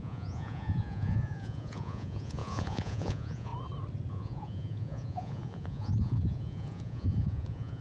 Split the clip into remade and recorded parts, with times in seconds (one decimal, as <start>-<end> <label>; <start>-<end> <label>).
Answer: 0.0-3.5 remade; 3.5-4.1 recorded; 4.1-7.8 remade